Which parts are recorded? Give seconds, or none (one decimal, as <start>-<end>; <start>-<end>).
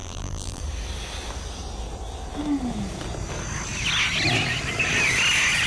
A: 0.6-5.7